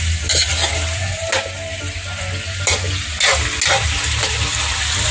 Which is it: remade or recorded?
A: recorded